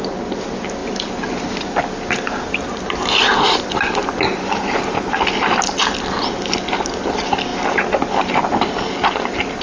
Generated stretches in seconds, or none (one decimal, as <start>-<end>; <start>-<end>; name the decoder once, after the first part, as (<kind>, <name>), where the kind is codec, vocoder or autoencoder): none